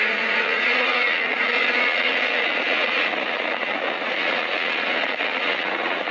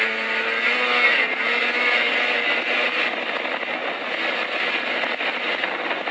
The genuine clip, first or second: second